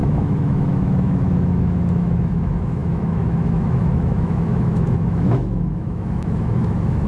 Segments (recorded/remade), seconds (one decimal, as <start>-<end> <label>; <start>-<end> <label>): 0.0-7.1 remade